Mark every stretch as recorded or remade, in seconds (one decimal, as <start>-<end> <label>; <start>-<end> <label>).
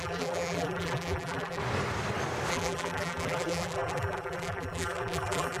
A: 0.0-1.6 remade; 1.6-2.5 recorded; 2.5-5.6 remade